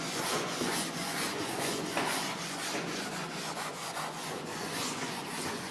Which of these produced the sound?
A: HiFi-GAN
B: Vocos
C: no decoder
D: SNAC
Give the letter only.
B